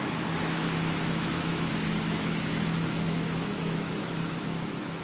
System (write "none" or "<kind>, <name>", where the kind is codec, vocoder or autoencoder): autoencoder, DAC-VAE